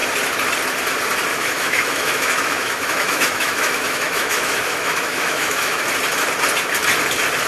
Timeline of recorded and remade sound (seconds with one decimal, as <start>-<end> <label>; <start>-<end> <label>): 0.0-1.3 recorded; 1.3-5.8 remade; 5.8-7.5 recorded